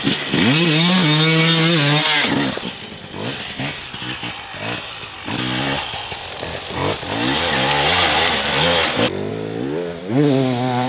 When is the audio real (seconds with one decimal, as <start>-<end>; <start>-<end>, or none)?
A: 0.0-10.9